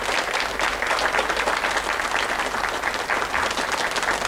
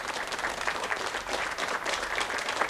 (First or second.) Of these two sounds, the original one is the first